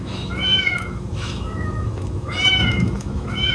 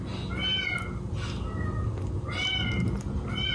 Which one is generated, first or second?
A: first